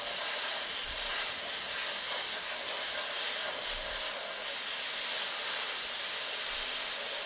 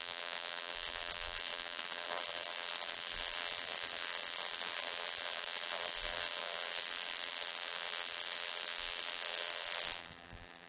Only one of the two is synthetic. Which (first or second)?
second